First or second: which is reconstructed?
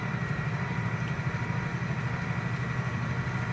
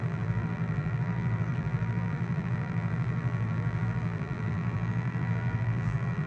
second